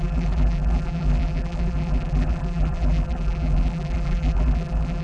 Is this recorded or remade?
remade